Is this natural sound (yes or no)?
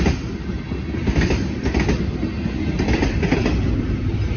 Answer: yes